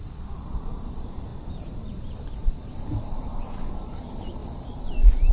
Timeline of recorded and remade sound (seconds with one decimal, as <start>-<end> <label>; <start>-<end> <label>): 0.0-4.4 remade; 4.4-5.3 recorded